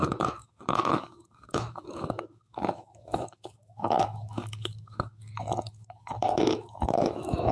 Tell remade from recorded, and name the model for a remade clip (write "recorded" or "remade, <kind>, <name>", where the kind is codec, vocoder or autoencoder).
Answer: remade, autoencoder, DAC-VAE